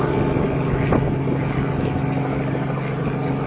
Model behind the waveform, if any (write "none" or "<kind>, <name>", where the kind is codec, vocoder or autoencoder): none